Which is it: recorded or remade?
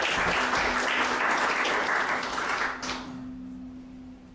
recorded